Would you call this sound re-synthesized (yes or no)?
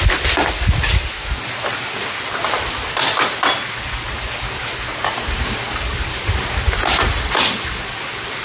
no